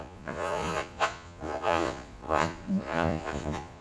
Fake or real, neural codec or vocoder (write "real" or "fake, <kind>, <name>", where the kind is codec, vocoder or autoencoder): fake, vocoder, Vocos